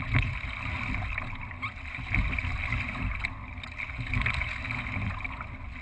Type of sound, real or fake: real